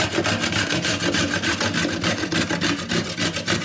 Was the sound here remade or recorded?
recorded